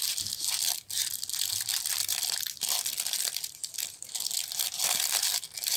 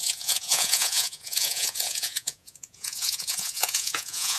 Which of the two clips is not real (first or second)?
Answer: second